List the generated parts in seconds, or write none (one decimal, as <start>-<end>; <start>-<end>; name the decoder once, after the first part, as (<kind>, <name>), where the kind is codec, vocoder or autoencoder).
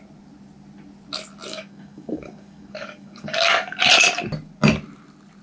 1.5-3.8 (codec, DAC)